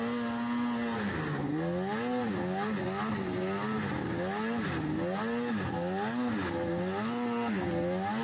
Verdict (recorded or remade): recorded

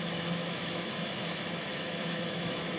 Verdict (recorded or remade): remade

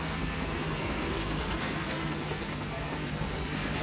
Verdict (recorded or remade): remade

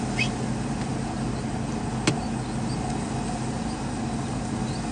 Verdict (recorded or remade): recorded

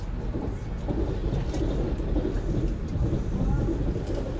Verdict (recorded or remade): recorded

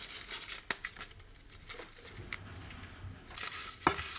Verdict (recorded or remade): recorded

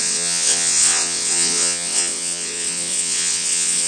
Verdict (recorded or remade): remade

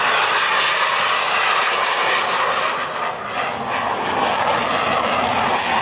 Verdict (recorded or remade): recorded